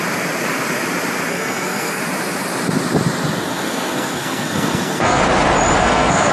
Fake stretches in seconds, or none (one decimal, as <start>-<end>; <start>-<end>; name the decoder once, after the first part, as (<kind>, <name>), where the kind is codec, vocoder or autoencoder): 1.3-2.0 (codec, SNAC); 3.5-5.2; 5.8-6.3